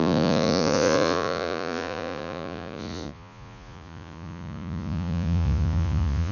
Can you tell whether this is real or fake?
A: fake